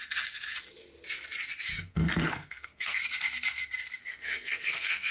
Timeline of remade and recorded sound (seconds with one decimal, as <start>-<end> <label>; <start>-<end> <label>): 0.0-1.7 recorded; 1.7-3.0 remade; 3.0-4.0 recorded; 4.0-5.1 remade